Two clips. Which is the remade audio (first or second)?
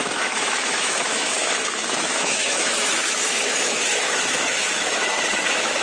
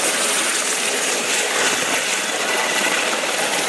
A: first